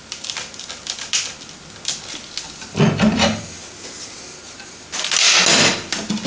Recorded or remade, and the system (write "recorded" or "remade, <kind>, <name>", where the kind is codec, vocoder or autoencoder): recorded